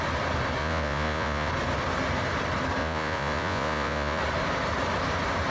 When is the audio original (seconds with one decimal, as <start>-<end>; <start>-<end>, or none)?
0.0-0.6; 1.5-2.8; 4.2-5.5